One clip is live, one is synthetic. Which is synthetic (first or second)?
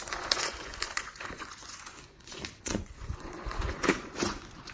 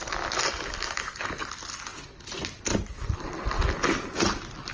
first